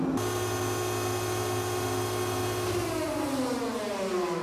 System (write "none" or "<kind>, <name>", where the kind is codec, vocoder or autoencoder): none